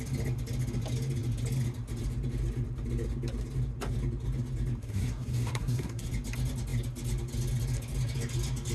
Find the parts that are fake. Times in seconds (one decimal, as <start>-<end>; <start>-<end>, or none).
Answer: 4.8-6.1